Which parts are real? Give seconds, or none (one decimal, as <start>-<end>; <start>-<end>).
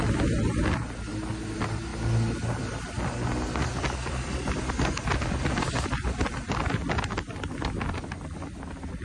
0.0-9.0